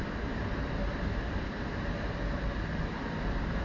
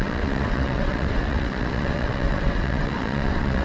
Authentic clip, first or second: first